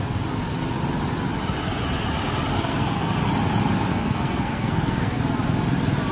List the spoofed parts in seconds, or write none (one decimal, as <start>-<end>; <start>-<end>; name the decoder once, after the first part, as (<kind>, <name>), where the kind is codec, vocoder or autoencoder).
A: 2.5-3.2 (codec, SNAC); 3.9-5.2